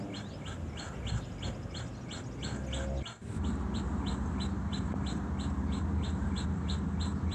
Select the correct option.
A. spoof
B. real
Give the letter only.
B